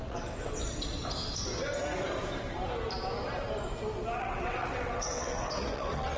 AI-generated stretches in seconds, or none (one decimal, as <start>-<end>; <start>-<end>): 0.0-0.6; 4.2-6.2